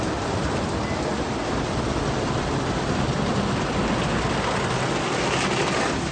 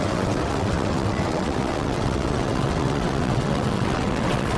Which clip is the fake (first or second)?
second